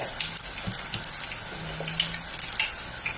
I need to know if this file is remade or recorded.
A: recorded